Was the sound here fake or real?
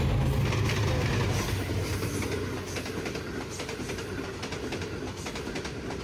real